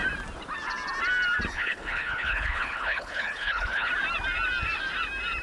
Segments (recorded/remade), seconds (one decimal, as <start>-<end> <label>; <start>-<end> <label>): 0.0-1.5 recorded; 1.5-3.9 remade; 3.9-5.4 recorded